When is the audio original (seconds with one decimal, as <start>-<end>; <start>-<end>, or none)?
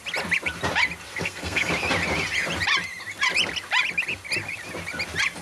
0.0-1.1; 1.7-5.4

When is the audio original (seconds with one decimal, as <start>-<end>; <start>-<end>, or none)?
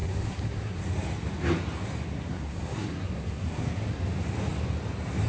0.8-2.1; 4.0-5.3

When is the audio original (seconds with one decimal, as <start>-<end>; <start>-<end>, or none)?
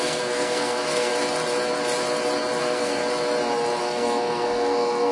1.1-2.6; 3.0-3.8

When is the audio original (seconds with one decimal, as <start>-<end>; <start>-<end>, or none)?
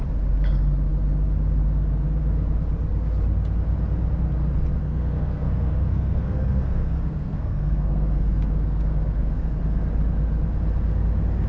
0.0-4.8; 9.6-11.5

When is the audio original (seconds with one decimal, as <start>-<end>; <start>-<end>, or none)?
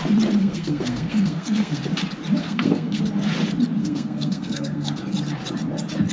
0.0-0.4; 1.8-2.4; 3.0-3.8; 5.0-6.1